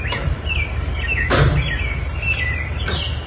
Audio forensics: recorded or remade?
recorded